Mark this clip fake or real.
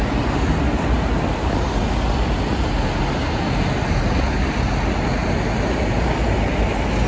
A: real